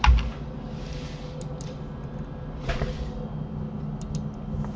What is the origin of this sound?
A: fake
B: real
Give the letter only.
B